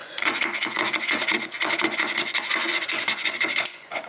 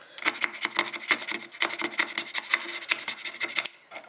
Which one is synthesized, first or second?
first